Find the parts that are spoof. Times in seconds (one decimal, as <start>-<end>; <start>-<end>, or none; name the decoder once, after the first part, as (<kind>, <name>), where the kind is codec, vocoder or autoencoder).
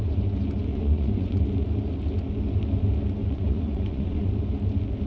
0.7-1.4 (vocoder, Vocos); 3.2-4.3